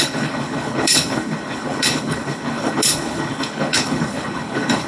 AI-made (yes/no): yes